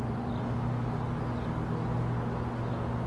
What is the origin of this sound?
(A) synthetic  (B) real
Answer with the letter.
B